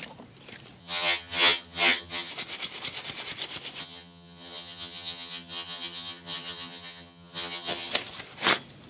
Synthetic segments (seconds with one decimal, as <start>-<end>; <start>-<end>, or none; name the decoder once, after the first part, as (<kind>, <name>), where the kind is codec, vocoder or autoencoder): 0.8-2.3 (vocoder, HiFi-GAN); 3.8-7.9